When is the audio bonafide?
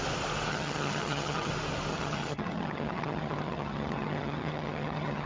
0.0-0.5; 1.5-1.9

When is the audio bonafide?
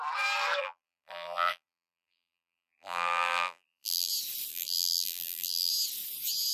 0.0-0.6; 4.1-4.5; 5.7-6.5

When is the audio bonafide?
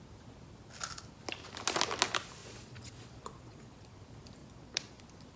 0.0-2.4; 4.0-4.4; 5.0-5.4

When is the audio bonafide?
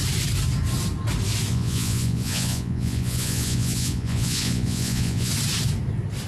0.0-1.5; 5.3-6.3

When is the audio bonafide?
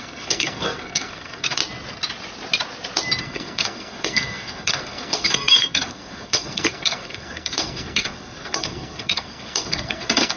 1.6-3.2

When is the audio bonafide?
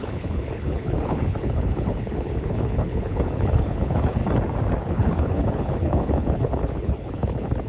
4.2-4.8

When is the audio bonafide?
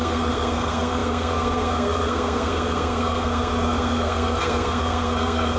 none